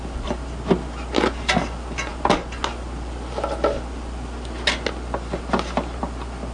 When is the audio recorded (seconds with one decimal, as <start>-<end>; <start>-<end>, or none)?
0.0-6.5